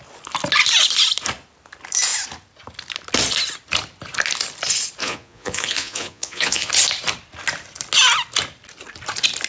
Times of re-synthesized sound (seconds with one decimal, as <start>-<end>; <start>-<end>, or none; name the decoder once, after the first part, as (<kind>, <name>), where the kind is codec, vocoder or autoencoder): 5.0-6.7 (vocoder, Vocos)